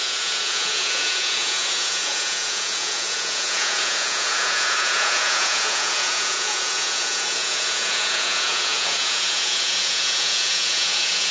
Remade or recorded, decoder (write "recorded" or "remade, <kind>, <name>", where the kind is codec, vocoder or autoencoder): remade, vocoder, Vocos